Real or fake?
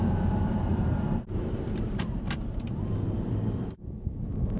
fake